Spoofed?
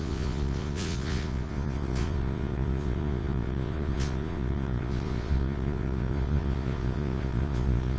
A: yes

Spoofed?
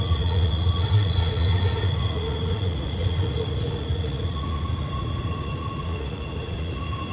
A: yes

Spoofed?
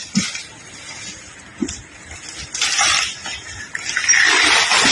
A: no